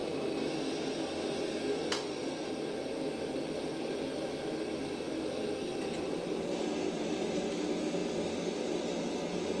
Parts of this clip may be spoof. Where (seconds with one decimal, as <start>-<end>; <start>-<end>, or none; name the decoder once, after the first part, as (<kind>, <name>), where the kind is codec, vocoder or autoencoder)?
none